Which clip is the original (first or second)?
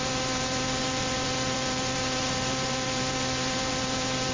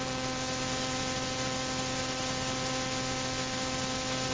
second